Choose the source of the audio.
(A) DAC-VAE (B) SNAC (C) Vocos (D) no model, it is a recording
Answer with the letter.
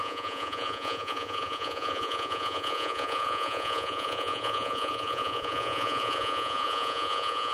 C